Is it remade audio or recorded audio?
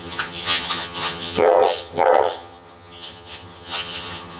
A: remade